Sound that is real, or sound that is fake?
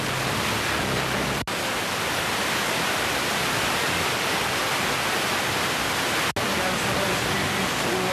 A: real